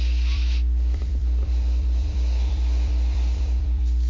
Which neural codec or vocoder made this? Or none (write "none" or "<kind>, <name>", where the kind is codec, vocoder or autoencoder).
vocoder, BigVGAN v2